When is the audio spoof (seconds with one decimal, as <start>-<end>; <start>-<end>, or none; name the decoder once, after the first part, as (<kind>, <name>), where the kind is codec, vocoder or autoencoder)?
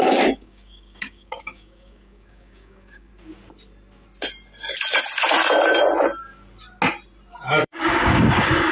0.0-3.1 (codec, DAC); 7.3-8.7